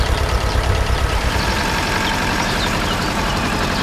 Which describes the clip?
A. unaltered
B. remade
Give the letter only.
B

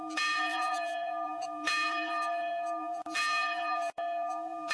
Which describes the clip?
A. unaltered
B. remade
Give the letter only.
B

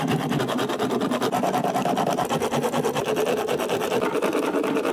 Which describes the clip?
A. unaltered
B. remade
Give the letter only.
B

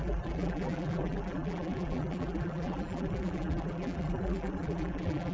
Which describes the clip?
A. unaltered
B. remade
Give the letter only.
B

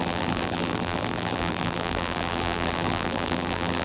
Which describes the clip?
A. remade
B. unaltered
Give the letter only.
A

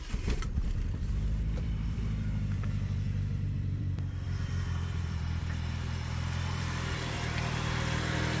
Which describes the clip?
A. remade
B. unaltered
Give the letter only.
A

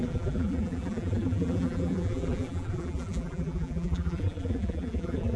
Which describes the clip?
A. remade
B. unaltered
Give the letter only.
A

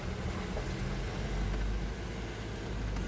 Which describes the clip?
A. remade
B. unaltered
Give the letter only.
B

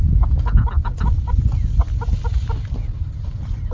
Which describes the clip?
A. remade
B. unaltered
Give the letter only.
B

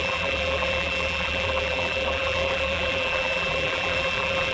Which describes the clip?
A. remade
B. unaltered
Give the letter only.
A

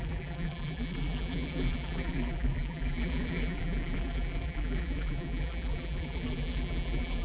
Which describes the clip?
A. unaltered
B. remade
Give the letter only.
B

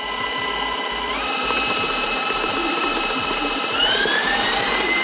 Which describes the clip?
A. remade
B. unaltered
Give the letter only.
A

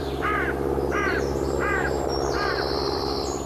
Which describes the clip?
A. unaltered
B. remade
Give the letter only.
B